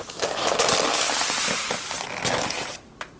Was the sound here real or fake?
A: real